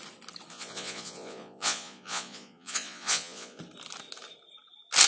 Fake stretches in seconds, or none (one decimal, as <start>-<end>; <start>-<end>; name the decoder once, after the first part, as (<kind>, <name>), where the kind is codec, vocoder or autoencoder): 0.5-3.6 (vocoder, Vocos)